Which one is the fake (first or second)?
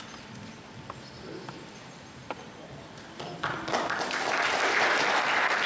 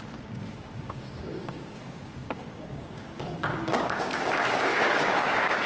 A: second